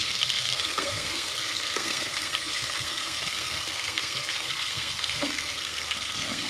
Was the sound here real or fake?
fake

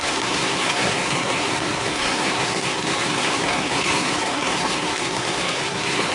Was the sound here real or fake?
fake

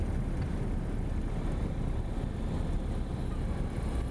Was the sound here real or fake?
real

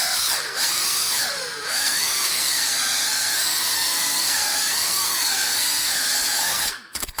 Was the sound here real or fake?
fake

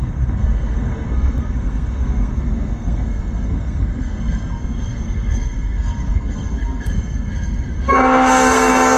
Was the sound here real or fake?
fake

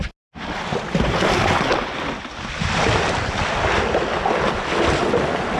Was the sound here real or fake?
real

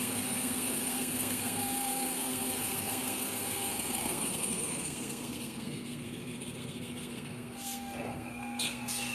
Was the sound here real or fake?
fake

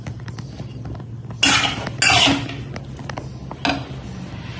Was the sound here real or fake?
real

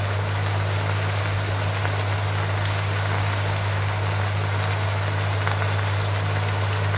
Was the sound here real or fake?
real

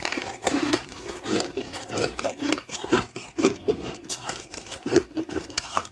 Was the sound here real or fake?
fake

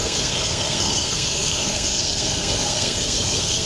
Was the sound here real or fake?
fake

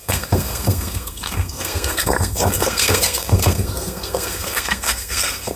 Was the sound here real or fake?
fake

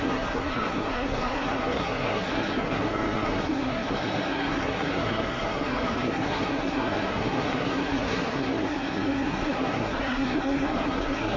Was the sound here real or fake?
fake